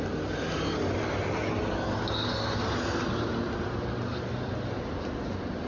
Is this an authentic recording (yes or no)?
yes